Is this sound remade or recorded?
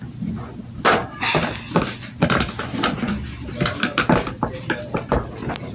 recorded